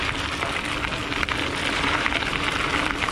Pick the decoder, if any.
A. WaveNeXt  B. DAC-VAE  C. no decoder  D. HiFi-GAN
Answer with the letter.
C